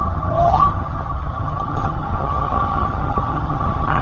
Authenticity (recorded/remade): remade